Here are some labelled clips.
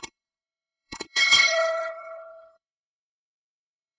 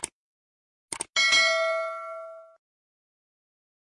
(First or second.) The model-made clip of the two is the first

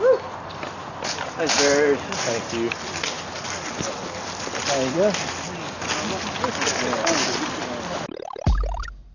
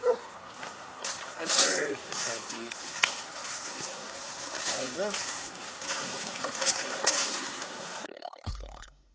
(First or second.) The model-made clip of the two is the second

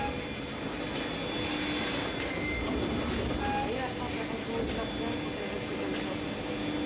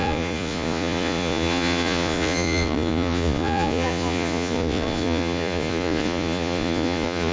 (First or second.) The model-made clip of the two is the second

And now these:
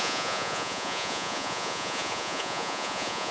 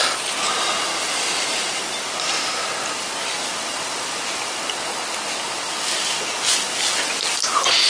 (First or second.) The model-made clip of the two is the first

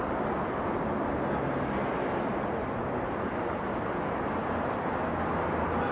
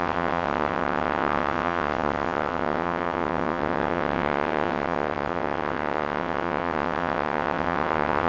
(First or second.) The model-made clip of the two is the second